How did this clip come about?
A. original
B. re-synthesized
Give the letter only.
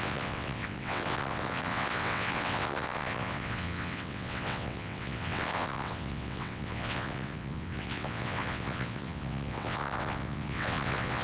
B